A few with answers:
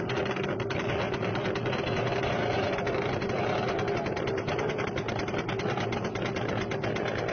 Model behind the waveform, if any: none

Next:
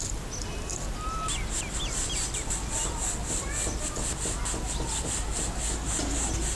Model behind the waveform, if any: none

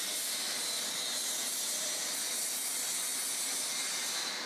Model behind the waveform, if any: none